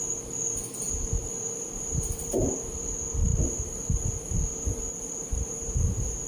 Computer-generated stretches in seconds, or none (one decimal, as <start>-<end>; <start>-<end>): 1.2-2.4; 3.3-6.3